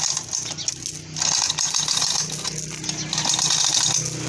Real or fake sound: real